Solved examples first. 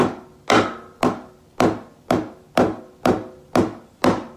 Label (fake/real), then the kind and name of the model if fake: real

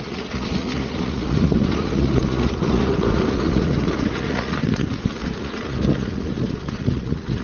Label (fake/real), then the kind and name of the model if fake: fake, vocoder, Vocos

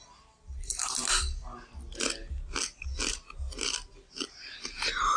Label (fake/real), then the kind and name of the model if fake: real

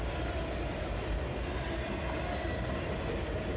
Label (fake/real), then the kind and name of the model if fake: real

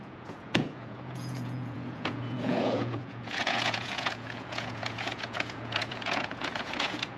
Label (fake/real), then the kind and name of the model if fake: fake, vocoder, Vocos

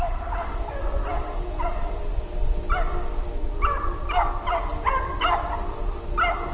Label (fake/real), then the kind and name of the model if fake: real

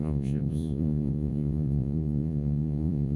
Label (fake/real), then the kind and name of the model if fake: fake, vocoder, Vocos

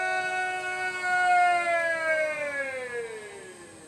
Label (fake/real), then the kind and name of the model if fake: real